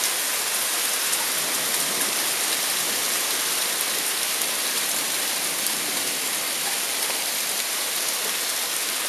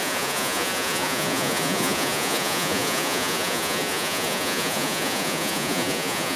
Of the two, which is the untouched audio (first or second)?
first